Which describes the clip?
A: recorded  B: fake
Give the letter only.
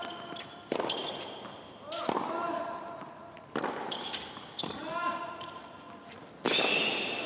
A